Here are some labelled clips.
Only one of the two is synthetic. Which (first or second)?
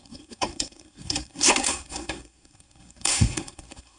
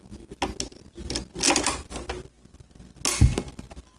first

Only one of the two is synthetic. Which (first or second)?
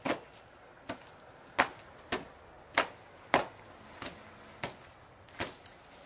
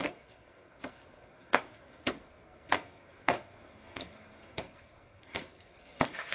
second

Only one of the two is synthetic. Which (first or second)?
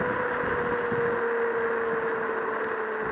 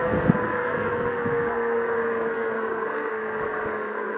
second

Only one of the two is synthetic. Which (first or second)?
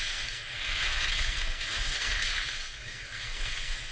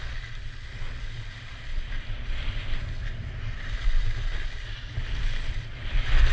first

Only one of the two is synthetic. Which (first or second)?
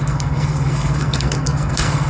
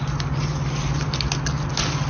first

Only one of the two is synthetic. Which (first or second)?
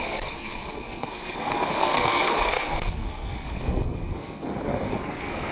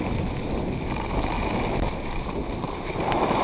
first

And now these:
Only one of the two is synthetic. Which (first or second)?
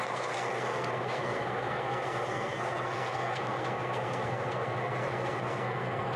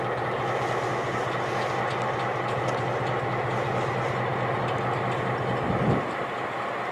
first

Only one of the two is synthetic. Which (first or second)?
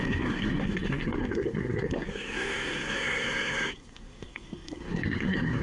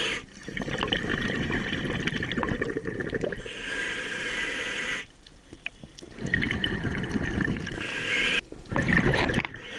first